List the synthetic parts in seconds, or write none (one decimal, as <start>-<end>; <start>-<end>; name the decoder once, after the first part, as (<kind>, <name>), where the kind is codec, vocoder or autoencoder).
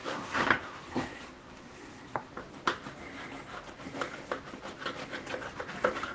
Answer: 0.0-2.3 (codec, SNAC)